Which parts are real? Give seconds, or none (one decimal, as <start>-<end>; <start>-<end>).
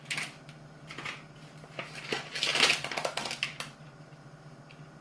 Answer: 0.0-5.0